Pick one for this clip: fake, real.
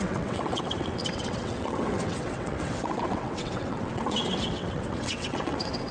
fake